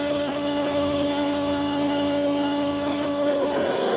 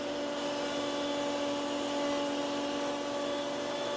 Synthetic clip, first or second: first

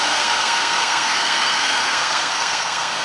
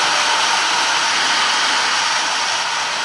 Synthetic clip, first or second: first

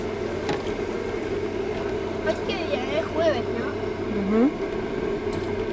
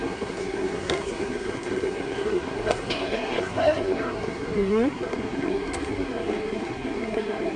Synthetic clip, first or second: second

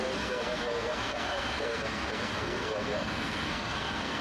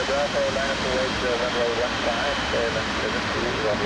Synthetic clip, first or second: first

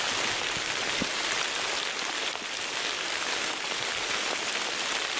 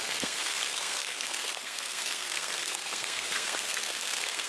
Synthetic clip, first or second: second